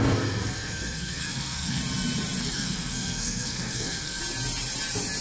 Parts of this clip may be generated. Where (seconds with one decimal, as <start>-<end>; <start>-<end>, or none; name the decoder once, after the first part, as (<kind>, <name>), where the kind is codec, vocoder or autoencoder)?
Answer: 0.0-1.8 (codec, SNAC); 2.4-4.2